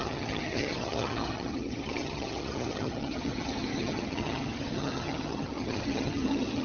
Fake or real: fake